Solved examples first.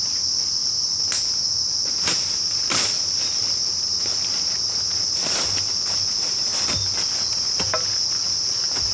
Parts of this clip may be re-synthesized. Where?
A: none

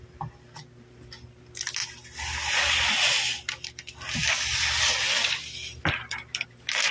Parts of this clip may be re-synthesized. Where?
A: none

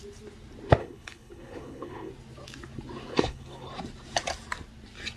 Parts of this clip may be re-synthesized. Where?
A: 0.8-2.1 (codec, HILCodec); 3.1-3.7

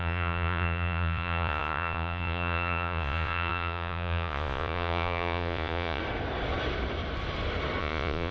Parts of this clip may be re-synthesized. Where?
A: 0.0-6.0 (vocoder, Vocos); 7.8-8.3

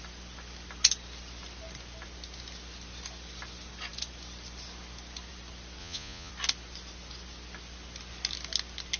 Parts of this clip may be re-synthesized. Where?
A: 5.8-6.3 (vocoder, Vocos)

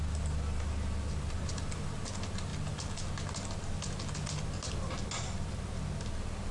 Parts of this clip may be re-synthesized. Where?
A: none

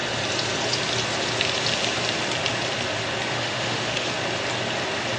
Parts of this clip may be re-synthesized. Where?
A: 3.3-4.1 (autoencoder, DAC-VAE)